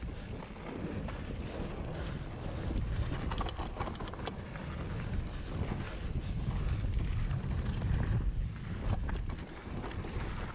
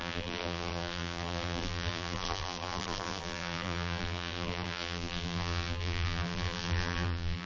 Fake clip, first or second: second